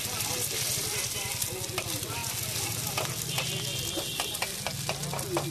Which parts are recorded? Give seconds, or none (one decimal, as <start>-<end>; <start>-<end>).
0.0-5.5